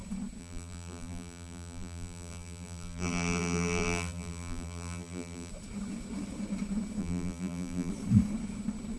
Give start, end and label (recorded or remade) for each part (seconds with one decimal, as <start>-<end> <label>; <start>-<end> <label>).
0.0-0.4 recorded; 0.4-5.5 remade; 5.5-7.0 recorded; 7.0-7.9 remade; 7.9-9.0 recorded